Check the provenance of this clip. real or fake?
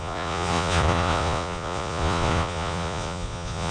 fake